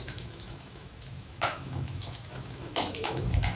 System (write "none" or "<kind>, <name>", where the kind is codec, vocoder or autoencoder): autoencoder, DAC-VAE